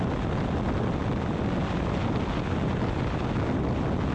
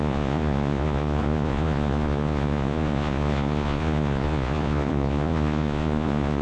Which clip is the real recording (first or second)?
first